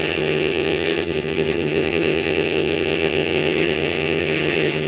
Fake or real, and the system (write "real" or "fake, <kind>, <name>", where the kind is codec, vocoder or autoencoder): fake, vocoder, HiFi-GAN